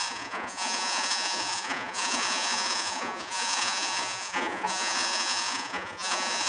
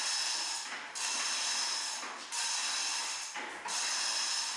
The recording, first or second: second